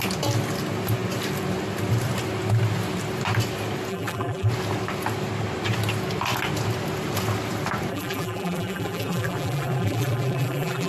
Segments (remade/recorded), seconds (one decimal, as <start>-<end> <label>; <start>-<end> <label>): 0.0-3.9 recorded; 3.9-4.5 remade; 4.5-7.9 recorded; 7.9-10.9 remade